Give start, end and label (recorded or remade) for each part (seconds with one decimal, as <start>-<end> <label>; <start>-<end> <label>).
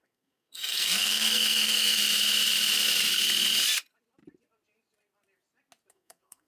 0.0-2.0 remade; 2.0-5.9 recorded; 5.9-6.5 remade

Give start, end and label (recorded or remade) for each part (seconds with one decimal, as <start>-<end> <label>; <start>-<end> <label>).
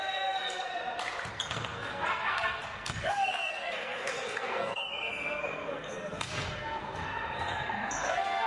0.0-0.7 remade; 0.7-1.3 recorded; 1.3-8.5 remade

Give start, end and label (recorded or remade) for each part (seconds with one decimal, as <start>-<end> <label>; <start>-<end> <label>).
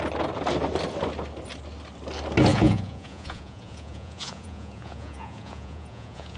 0.0-2.5 recorded; 2.5-6.4 remade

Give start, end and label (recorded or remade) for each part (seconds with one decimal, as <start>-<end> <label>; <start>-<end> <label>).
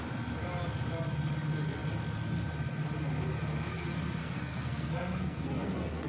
0.0-4.2 recorded; 4.2-6.1 remade